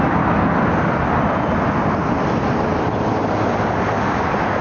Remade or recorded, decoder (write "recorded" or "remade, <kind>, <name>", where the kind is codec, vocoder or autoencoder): recorded